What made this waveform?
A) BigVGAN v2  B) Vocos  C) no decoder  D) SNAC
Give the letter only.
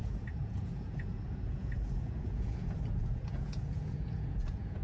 B